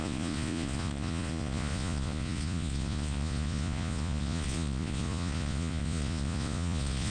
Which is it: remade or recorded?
remade